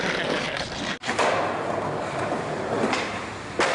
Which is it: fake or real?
real